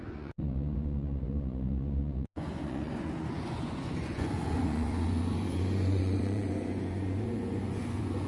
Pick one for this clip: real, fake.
fake